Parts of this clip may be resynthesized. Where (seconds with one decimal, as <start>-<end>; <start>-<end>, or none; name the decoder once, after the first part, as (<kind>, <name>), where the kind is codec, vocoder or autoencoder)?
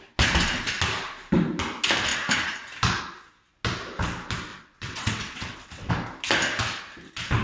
4.5-5.9 (vocoder, WaveNeXt)